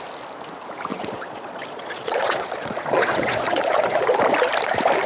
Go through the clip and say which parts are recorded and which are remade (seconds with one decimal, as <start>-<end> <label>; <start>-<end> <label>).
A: 0.0-0.9 recorded; 0.9-4.0 remade; 4.0-5.1 recorded